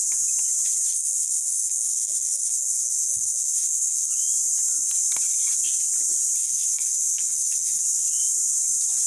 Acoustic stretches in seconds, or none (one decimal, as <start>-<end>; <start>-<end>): 0.0-0.9; 4.1-6.4; 7.8-9.1